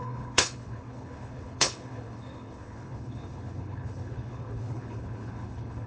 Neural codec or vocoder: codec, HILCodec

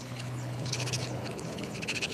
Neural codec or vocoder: codec, HILCodec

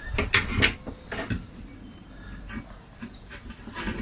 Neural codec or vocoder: none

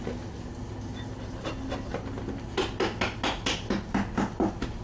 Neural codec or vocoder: none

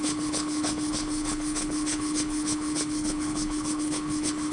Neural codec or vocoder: codec, HILCodec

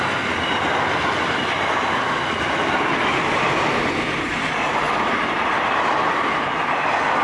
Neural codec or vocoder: none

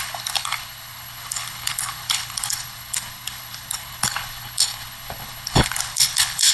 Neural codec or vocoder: codec, HILCodec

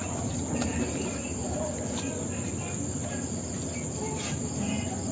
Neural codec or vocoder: none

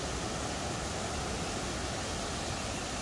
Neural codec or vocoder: none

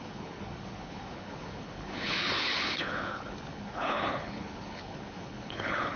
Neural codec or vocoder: codec, HILCodec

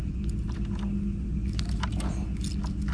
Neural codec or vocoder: none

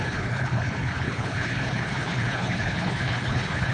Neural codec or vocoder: codec, HILCodec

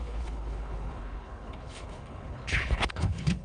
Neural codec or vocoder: codec, HILCodec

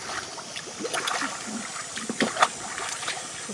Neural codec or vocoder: none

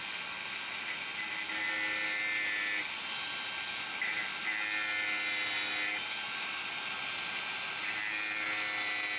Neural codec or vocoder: none